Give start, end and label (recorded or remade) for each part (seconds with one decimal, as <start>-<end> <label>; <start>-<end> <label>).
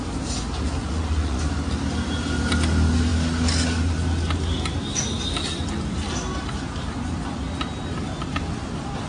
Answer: 0.0-0.8 recorded; 0.8-1.4 remade; 1.4-9.1 recorded